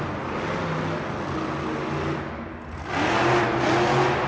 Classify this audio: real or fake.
real